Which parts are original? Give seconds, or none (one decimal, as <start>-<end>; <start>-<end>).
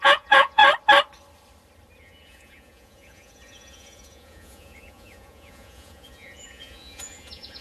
0.6-2.0